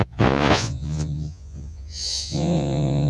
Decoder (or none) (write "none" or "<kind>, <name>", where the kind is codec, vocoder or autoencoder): vocoder, Vocos